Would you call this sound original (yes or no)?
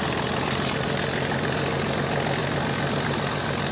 yes